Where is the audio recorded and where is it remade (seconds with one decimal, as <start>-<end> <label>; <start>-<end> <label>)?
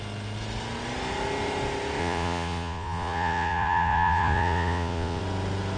0.0-2.0 recorded; 2.0-5.2 remade; 5.2-5.8 recorded